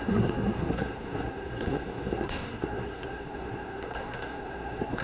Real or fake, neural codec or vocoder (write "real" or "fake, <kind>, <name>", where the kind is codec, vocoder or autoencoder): fake, codec, SNAC